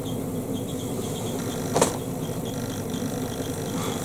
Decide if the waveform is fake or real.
fake